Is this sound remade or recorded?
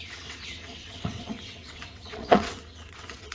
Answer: remade